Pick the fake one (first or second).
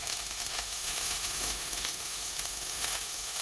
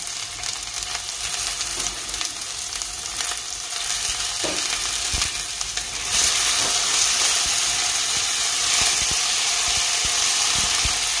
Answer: first